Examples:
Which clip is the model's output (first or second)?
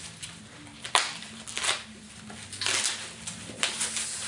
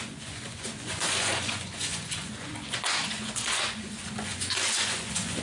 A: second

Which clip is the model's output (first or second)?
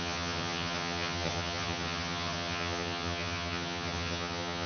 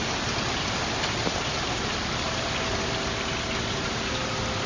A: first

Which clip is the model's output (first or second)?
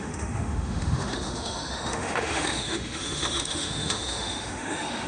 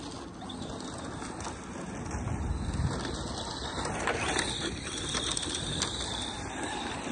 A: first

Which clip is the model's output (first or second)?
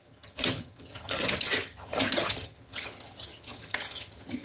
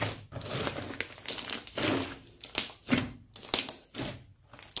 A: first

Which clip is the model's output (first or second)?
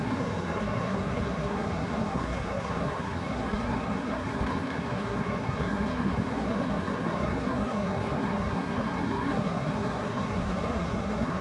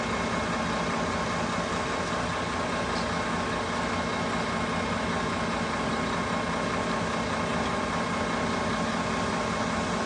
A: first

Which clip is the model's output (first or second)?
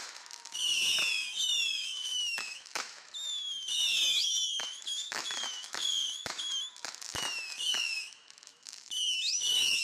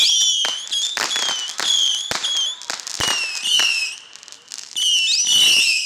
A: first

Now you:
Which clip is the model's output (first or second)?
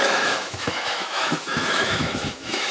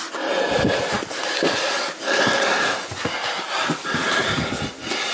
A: first